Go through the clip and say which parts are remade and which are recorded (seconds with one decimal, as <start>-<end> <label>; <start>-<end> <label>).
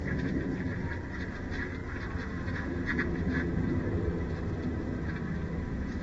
0.0-6.0 recorded